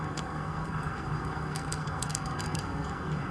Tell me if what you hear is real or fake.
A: fake